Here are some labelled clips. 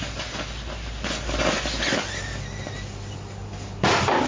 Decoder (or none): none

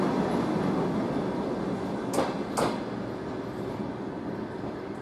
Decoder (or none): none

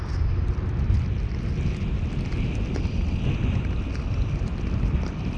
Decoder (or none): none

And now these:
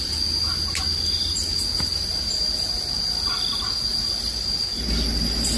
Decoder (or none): none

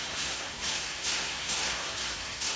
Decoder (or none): codec, SNAC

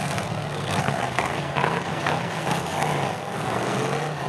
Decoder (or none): codec, SNAC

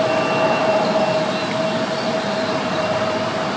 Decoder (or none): none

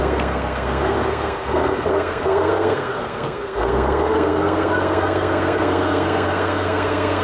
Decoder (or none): codec, SNAC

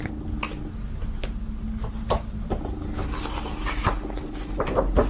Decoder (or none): none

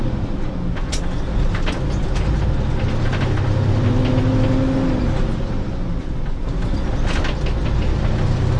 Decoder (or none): none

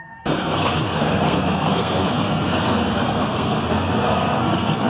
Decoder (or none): codec, SNAC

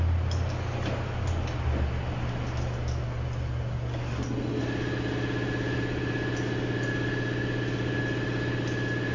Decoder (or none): none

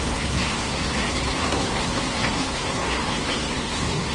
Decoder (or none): codec, SNAC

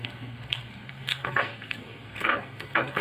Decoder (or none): codec, SNAC